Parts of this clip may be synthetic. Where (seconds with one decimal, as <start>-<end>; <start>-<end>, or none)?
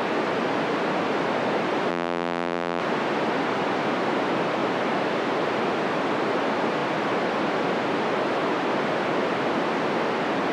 1.9-2.8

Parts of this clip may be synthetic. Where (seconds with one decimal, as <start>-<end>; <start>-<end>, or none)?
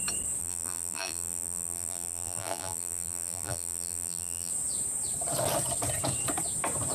0.4-4.5